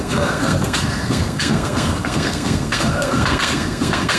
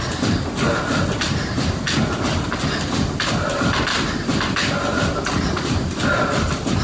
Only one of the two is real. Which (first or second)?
second